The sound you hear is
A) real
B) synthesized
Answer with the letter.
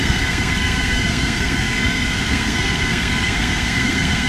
B